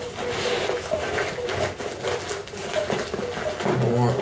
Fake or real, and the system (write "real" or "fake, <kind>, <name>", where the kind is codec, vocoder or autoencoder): real